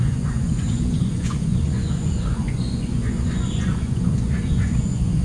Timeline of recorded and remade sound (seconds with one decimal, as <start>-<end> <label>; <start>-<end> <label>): 0.0-5.2 remade